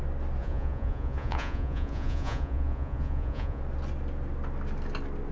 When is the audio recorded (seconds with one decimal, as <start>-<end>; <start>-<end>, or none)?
0.0-0.4; 3.6-5.3